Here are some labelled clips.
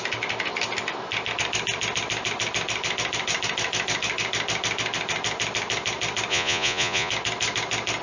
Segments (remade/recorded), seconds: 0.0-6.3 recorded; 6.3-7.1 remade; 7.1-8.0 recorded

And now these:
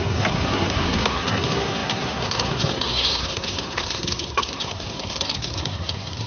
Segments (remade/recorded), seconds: 0.0-6.3 remade

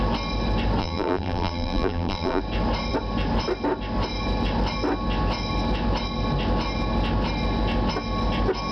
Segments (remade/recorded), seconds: 0.0-0.8 recorded; 0.8-2.4 remade; 2.4-8.7 recorded

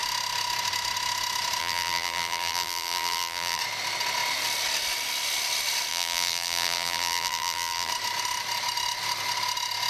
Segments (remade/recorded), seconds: 0.0-1.6 recorded; 1.6-3.6 remade; 3.6-5.9 recorded; 5.9-7.9 remade; 7.9-9.9 recorded

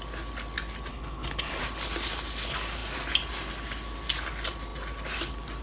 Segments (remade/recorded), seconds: 0.0-0.9 recorded; 0.9-1.6 remade; 1.6-5.6 recorded

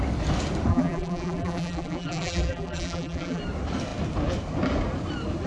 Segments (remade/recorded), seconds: 0.0-0.7 recorded; 0.7-3.4 remade; 3.4-5.5 recorded

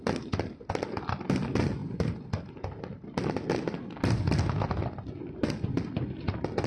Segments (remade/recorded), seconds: 0.0-6.7 recorded

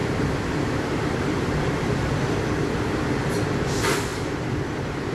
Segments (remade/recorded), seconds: 0.0-3.0 remade; 3.0-4.1 recorded; 4.1-4.6 remade; 4.6-5.1 recorded